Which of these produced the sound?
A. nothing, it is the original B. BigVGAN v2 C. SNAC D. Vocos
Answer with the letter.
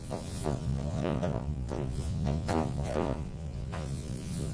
D